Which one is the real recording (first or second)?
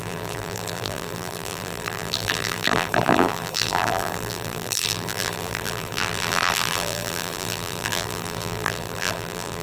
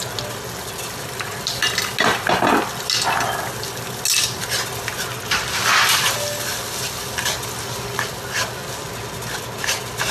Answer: second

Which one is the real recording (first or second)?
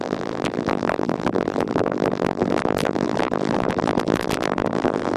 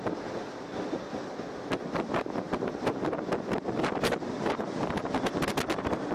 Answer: second